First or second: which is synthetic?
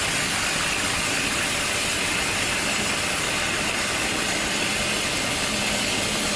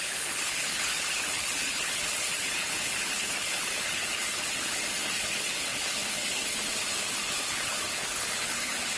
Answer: second